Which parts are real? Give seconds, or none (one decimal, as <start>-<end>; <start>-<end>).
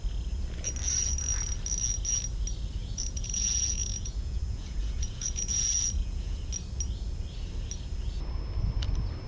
0.0-2.8; 6.4-9.3